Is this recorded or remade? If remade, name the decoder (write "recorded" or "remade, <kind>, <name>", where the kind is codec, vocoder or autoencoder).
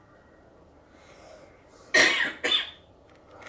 recorded